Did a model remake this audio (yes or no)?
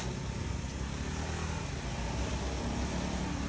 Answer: no